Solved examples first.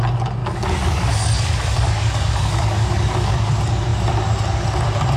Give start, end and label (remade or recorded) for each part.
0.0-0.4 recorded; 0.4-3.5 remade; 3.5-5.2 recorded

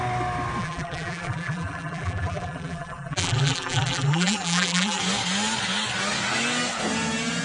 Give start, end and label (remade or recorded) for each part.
0.0-0.6 recorded; 0.6-5.0 remade; 5.0-7.4 recorded

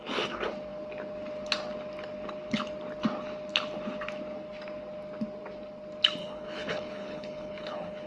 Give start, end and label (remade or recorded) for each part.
0.0-6.2 recorded; 6.2-8.1 remade